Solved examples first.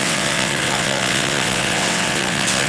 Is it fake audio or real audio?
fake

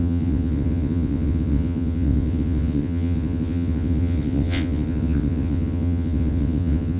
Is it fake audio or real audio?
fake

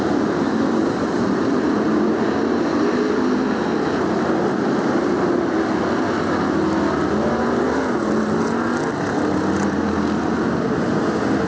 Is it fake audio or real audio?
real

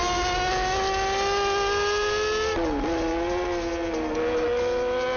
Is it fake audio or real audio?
real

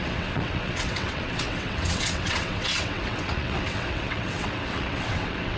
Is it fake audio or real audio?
fake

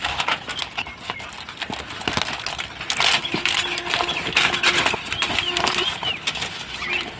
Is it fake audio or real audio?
real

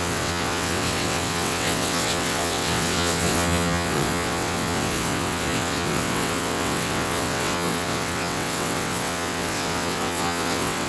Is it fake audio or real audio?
fake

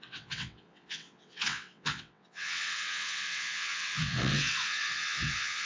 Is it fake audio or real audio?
fake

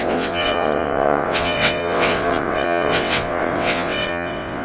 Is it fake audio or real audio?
fake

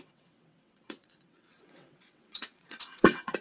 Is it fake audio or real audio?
fake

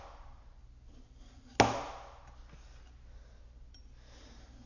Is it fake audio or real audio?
real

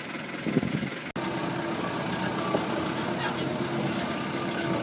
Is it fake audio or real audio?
real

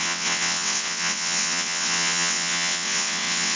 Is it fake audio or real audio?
fake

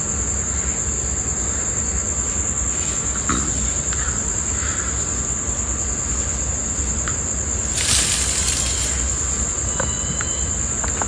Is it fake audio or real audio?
real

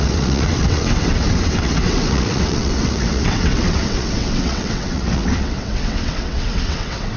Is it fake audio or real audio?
fake